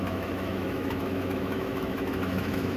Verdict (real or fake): fake